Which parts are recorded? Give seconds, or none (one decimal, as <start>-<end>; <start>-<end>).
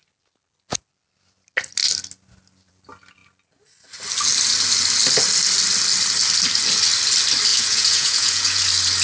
0.0-7.5; 8.6-9.0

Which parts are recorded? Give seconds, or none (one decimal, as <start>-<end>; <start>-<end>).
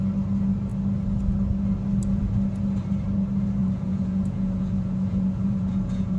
0.0-3.6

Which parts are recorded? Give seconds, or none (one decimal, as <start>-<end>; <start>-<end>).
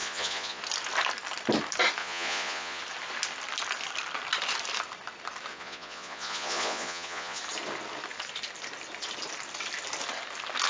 0.6-2.0; 2.8-5.5; 7.4-10.7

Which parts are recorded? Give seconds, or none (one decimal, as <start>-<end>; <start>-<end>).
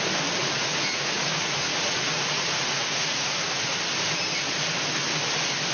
0.0-0.4; 3.8-5.7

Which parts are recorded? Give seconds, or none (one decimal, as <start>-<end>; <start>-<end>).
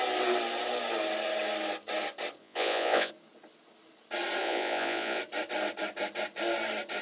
0.0-2.4; 3.1-4.4; 5.2-7.0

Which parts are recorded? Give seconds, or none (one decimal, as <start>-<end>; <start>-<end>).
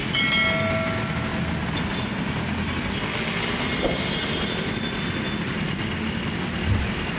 0.0-7.2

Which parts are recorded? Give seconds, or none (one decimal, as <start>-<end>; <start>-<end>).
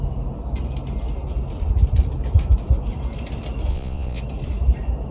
0.0-3.7; 4.2-5.1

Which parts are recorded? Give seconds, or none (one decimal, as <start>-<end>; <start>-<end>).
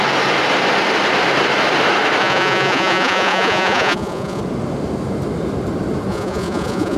0.0-2.2; 4.4-6.1